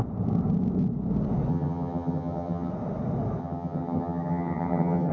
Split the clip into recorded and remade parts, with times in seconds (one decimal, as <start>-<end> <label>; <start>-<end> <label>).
0.0-1.5 recorded; 1.5-2.7 remade; 2.7-3.4 recorded; 3.4-5.1 remade